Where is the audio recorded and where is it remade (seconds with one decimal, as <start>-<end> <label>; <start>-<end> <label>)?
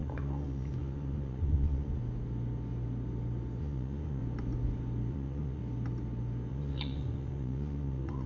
0.0-2.0 remade; 2.0-3.6 recorded; 3.6-4.2 remade; 4.2-5.1 recorded; 5.1-5.6 remade; 5.6-6.5 recorded; 6.5-8.3 remade